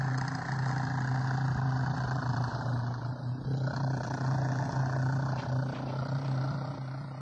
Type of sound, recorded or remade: recorded